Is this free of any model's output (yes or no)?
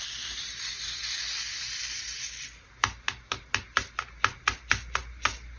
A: yes